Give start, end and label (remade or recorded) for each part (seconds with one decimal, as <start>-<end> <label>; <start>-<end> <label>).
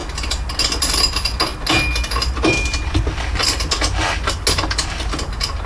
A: 0.0-5.7 recorded